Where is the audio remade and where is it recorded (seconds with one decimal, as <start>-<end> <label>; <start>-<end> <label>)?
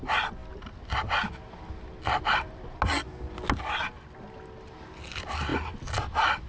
0.0-6.5 recorded